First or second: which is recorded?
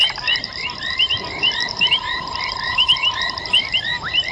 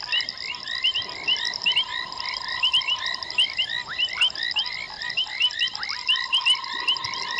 second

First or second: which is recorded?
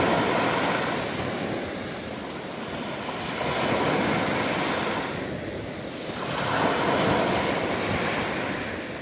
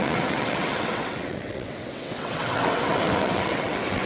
first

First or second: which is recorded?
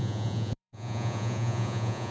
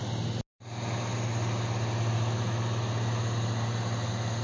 second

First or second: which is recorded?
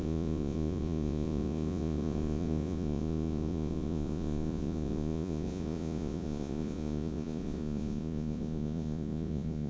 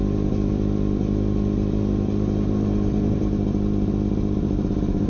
second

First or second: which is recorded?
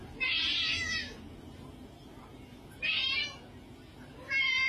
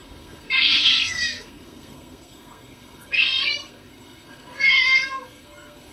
first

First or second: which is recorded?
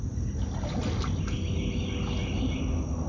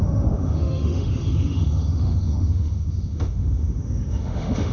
first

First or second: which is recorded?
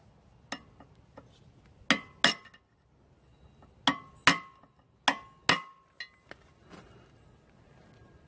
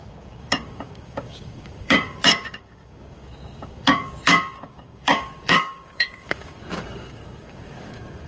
first